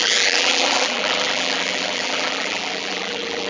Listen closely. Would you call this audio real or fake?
fake